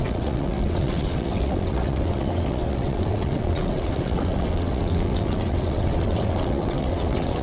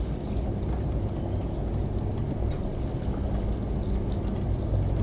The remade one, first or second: first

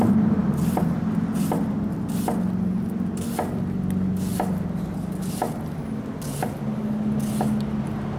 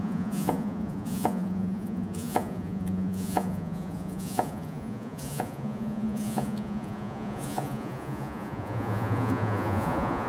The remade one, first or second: second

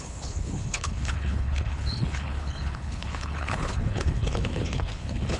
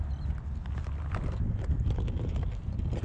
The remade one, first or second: first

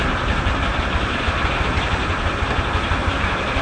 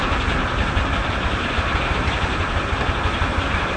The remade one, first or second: second